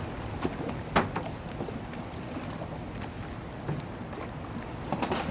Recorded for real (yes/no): yes